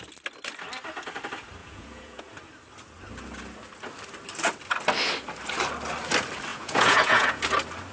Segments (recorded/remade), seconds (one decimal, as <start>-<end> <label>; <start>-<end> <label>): 0.0-1.6 recorded; 1.6-2.3 remade; 2.3-6.5 recorded; 6.5-7.4 remade; 7.4-7.9 recorded